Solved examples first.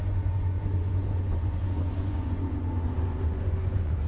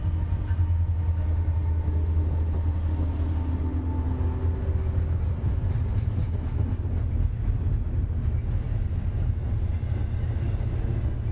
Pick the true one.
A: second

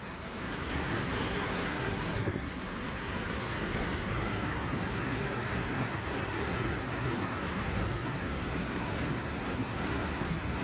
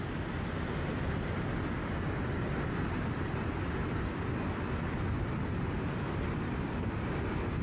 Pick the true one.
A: second